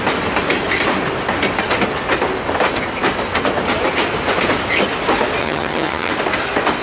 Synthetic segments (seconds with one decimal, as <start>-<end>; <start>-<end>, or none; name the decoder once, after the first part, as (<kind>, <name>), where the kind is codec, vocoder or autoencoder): 5.4-6.1 (vocoder, HiFi-GAN)